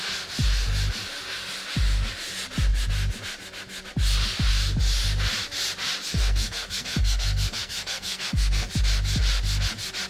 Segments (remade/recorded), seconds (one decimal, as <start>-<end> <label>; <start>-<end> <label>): 0.0-6.1 recorded; 6.1-8.7 remade; 8.7-10.1 recorded